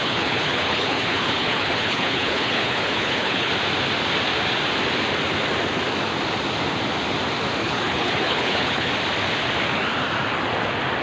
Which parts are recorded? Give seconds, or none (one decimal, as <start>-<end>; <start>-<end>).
3.5-7.6; 8.9-11.0